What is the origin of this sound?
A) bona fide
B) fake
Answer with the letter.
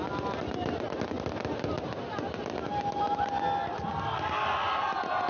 A